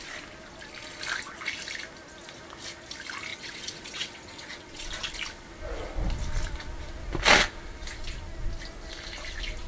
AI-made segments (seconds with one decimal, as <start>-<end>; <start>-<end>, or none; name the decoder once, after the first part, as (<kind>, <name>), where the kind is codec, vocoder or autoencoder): 3.3-4.9 (vocoder, WaveNeXt)